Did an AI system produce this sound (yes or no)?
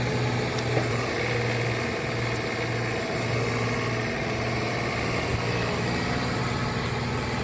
no